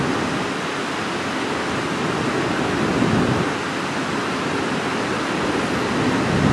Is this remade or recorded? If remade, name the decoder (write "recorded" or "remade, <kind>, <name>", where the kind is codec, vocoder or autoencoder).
recorded